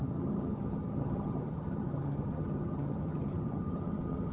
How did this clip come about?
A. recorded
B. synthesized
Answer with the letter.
B